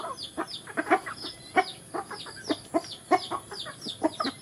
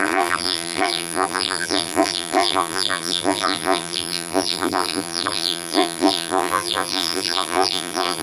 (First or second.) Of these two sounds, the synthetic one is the second